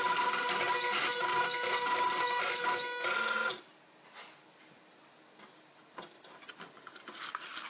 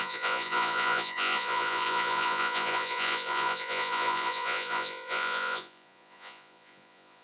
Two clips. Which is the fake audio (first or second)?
second